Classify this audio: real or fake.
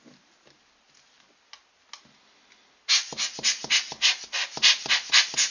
real